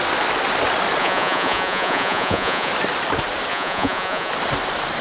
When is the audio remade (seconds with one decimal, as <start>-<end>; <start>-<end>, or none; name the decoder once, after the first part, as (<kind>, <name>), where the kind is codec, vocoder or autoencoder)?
1.0-2.7 (vocoder, Vocos); 3.5-4.3